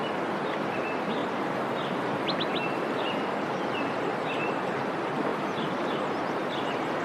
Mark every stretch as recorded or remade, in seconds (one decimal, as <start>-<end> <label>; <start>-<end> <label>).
0.0-1.2 recorded; 1.2-2.4 remade; 2.4-5.3 recorded; 5.3-6.2 remade; 6.2-7.0 recorded